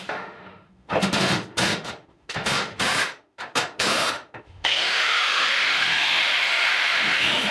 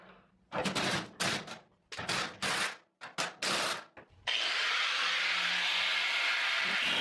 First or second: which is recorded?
second